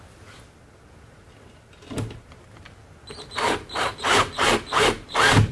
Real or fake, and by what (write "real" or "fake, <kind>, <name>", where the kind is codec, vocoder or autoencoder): real